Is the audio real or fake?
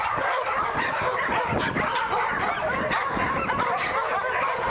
real